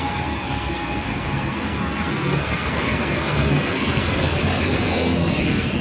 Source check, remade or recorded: remade